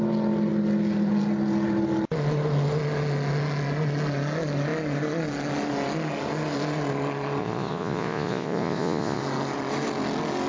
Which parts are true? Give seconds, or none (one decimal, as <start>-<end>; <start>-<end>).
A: 0.0-7.4; 9.2-10.5